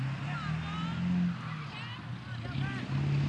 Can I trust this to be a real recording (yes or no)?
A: yes